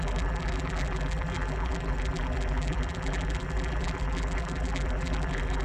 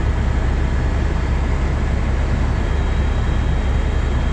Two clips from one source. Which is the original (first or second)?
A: second